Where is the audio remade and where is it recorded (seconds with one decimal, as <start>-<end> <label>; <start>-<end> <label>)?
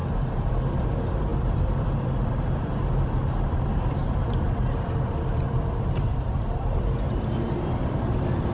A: 0.0-0.5 recorded; 0.5-8.5 remade